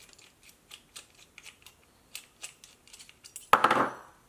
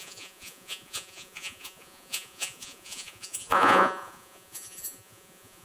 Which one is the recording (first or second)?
first